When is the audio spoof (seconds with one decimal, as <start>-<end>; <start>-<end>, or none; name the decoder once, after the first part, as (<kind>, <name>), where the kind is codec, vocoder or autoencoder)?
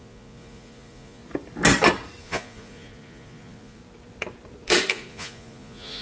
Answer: 0.0-1.2 (vocoder, Vocos); 2.2-3.8; 4.9-6.0